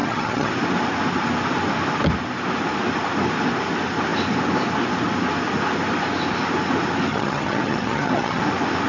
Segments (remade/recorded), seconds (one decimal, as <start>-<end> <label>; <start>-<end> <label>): 0.0-0.5 remade; 0.5-7.1 recorded; 7.1-8.4 remade; 8.4-8.9 recorded